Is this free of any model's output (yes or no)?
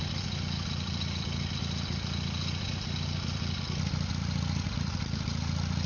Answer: yes